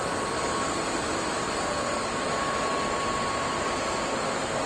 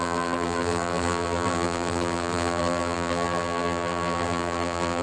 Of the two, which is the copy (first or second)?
second